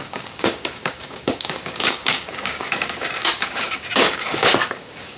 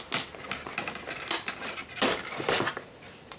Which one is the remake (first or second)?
first